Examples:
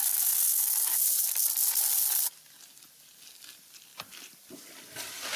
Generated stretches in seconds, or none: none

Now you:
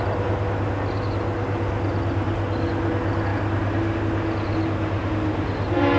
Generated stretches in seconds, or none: none

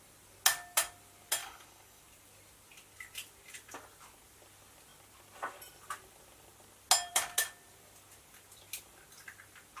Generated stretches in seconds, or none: 1.4-2.0 (codec, DAC)

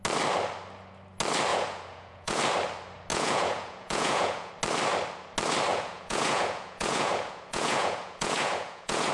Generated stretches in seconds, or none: 1.5-2.4 (vocoder, Vocos); 3.1-4.5; 5.7-9.1

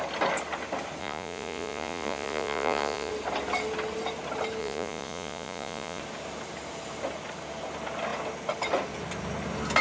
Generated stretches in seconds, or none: 1.0-3.1 (vocoder, Vocos); 4.6-6.0

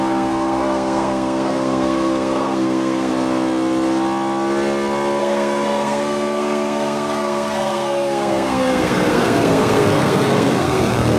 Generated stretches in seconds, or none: 0.0-3.1 (codec, SNAC); 5.2-11.2

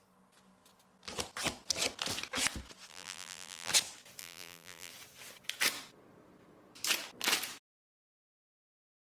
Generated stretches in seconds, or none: 2.9-3.7 (vocoder, BigVGAN v2); 4.2-4.9

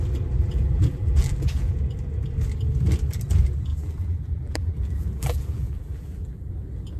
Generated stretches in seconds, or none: 0.4-1.7 (vocoder, BigVGAN v2); 3.7-6.5